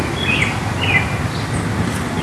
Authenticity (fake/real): real